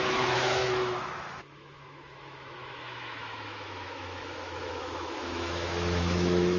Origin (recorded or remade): remade